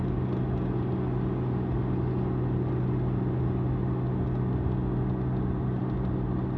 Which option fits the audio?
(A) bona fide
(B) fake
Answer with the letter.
A